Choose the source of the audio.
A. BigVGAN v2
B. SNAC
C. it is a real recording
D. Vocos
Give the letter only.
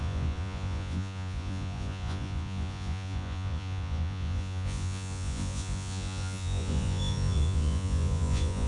D